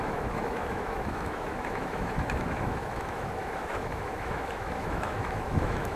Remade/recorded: remade